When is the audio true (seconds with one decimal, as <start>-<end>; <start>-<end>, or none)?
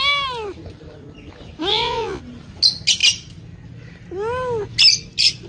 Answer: 0.0-1.7; 2.2-5.5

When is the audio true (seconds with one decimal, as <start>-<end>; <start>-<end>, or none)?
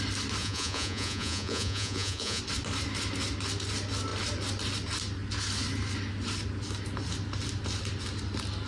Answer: 0.0-0.4; 2.4-8.7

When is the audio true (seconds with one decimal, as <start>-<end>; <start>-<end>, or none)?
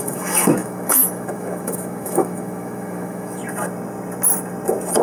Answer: 3.4-5.0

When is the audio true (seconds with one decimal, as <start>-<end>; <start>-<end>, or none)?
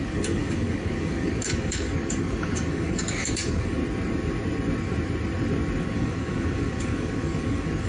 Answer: 3.8-5.8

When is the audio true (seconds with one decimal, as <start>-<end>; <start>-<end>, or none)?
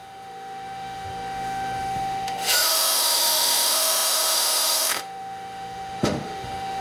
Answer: none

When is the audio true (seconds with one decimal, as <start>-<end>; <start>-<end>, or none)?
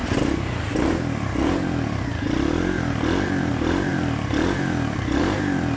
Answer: 0.0-5.8